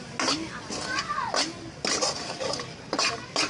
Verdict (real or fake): real